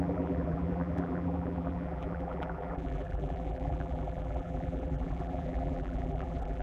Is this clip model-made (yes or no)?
yes